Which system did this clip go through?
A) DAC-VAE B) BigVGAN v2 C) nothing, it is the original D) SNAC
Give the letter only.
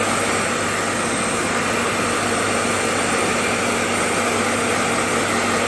C